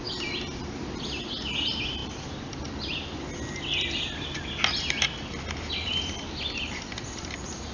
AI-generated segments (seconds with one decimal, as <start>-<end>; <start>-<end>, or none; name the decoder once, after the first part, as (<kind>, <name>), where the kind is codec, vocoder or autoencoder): none